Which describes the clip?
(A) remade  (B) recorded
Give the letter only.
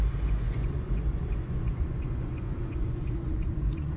A